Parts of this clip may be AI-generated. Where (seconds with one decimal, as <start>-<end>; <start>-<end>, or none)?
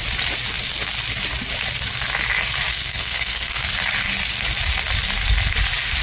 2.7-3.6